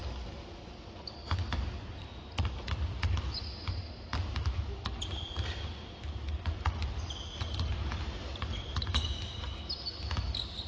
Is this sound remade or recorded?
recorded